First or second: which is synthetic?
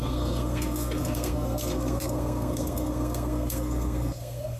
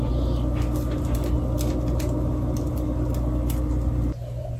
first